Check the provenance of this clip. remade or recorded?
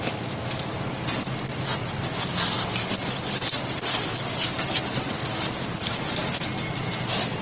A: recorded